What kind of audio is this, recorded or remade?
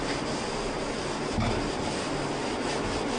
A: recorded